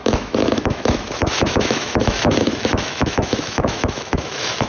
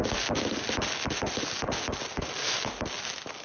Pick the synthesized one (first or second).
first